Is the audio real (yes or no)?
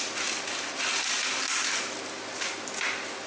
yes